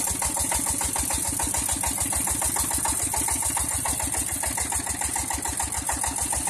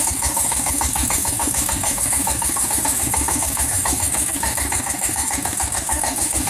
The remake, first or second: second